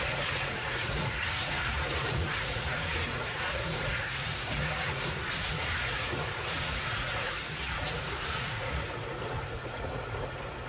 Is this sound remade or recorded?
remade